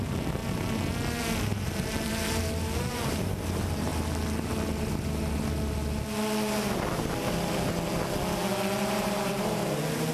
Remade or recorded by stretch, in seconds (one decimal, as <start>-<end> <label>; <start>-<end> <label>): 0.0-0.4 remade; 0.4-1.2 recorded; 1.2-3.9 remade; 3.9-8.8 recorded; 8.8-10.1 remade